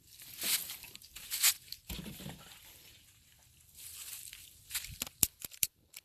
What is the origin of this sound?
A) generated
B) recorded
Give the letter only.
A